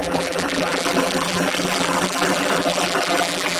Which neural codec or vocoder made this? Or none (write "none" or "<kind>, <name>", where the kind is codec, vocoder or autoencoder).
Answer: vocoder, BigVGAN v2